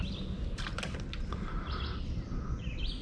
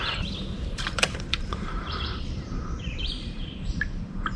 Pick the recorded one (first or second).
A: first